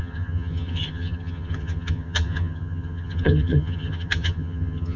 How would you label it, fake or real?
fake